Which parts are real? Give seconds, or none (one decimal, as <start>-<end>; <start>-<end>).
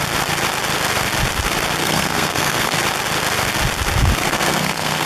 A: 0.0-1.8; 2.8-4.2